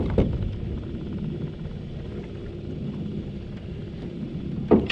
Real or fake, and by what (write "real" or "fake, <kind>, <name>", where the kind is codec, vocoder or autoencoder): real